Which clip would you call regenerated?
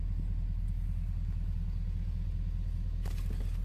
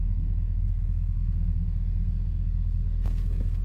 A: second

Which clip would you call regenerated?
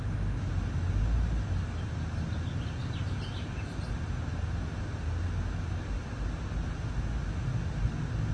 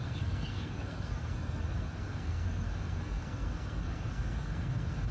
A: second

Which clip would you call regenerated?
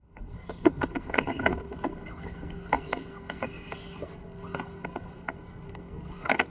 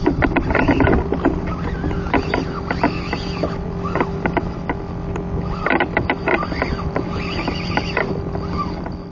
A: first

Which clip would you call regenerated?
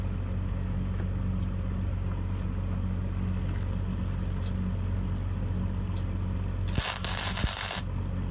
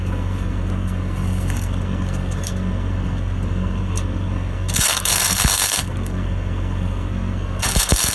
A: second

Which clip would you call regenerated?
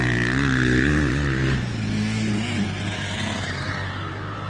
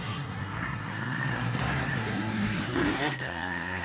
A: second